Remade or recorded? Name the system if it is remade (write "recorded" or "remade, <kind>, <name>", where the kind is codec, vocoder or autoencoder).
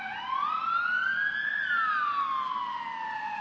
recorded